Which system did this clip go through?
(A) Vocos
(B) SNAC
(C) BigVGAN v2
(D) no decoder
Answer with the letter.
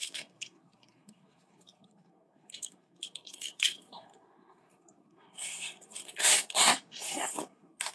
B